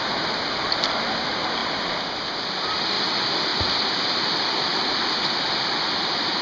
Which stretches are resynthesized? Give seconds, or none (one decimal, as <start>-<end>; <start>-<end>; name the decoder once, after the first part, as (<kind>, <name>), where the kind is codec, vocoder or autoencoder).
none